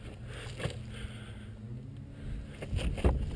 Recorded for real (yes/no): yes